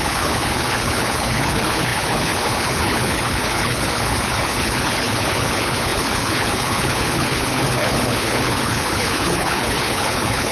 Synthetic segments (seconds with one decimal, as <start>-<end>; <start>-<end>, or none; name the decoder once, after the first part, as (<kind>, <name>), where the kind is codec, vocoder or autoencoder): 0.0-10.5 (codec, HILCodec)